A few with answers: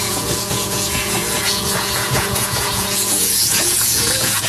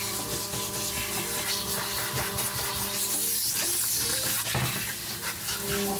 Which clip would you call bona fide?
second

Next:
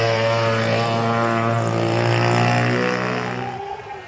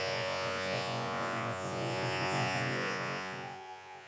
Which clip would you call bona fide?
first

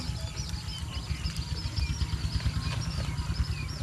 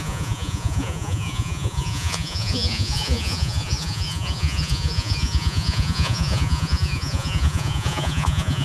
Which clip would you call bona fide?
first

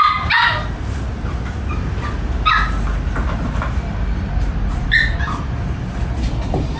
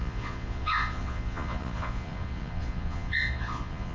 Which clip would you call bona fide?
first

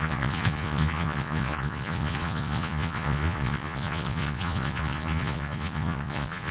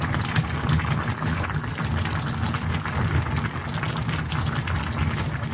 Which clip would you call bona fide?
second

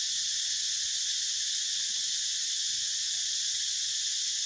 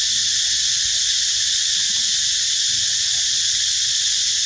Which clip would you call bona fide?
second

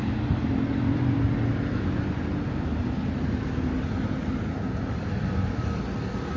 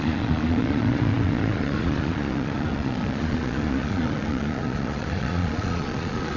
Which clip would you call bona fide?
first